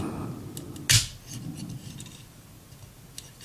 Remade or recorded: recorded